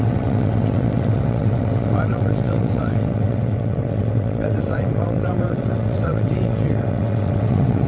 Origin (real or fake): fake